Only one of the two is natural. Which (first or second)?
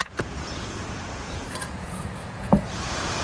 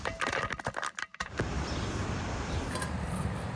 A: second